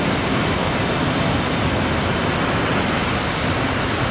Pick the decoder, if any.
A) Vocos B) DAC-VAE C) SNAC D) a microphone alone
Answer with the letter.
D